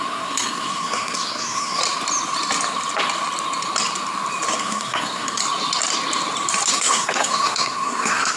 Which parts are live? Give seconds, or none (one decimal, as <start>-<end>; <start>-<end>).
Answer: 1.8-4.6; 5.4-6.7